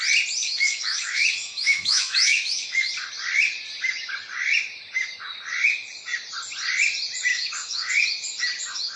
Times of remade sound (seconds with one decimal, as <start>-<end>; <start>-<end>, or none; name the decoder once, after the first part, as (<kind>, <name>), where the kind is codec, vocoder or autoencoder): 0.4-2.9 (autoencoder, DAC-VAE); 7.3-7.9